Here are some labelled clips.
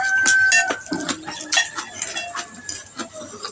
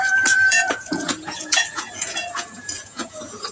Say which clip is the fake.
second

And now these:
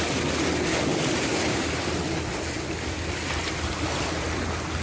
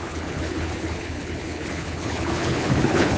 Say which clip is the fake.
second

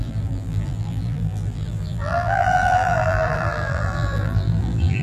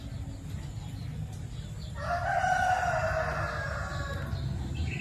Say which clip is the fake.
first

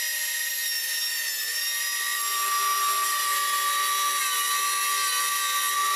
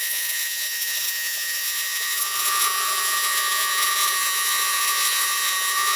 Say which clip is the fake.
second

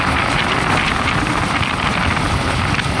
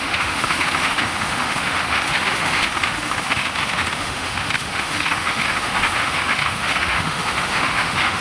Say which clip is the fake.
second